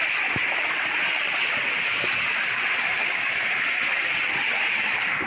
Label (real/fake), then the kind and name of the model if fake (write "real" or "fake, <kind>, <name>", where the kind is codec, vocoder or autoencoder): real